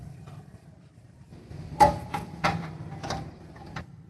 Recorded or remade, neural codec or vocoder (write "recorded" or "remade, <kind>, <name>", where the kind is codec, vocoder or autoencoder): remade, vocoder, BigVGAN v2